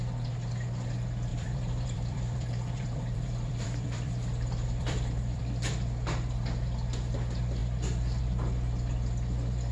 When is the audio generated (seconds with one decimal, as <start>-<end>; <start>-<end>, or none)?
1.3-5.4